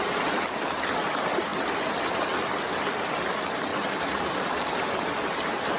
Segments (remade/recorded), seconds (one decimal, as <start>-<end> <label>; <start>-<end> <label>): 0.0-3.7 recorded; 3.7-4.9 remade; 4.9-5.8 recorded